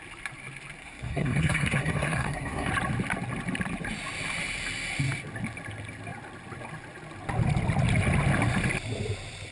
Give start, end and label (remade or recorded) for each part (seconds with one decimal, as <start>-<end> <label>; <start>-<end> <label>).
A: 0.0-0.8 recorded; 0.8-2.7 remade; 2.7-9.5 recorded